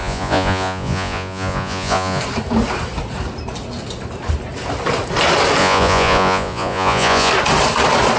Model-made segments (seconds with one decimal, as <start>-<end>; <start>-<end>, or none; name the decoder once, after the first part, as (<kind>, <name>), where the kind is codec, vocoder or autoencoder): 0.0-2.2 (vocoder, Vocos); 5.6-7.3